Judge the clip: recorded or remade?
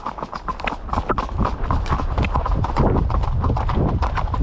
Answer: recorded